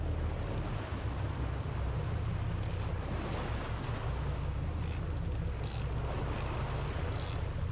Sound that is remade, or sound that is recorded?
recorded